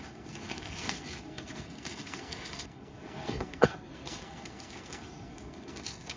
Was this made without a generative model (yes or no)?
no